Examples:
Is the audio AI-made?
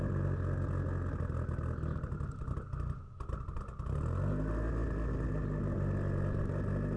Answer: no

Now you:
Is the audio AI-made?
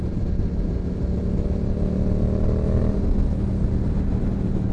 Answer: no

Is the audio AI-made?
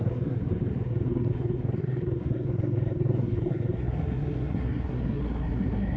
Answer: yes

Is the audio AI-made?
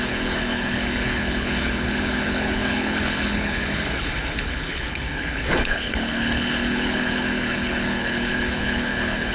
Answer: yes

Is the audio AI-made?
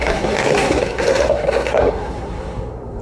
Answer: yes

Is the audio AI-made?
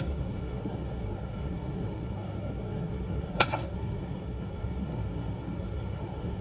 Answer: yes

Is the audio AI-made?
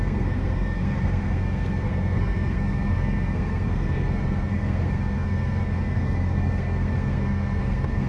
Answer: yes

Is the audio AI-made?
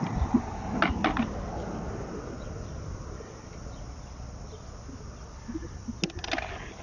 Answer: no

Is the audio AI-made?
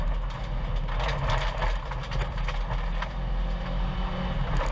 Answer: no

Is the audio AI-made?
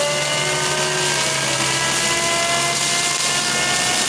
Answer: no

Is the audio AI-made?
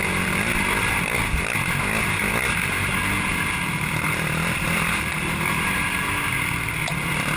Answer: no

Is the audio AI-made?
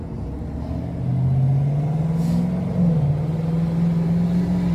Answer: no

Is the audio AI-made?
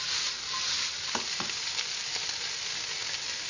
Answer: no